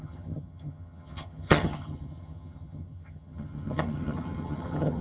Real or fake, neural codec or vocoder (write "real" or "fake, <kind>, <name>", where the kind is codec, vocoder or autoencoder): fake, vocoder, HiFi-GAN